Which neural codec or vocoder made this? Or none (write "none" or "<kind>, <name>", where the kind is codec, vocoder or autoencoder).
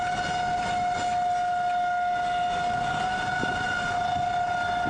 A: none